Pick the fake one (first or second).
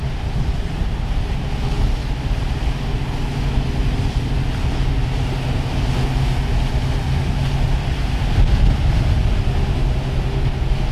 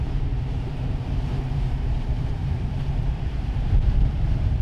second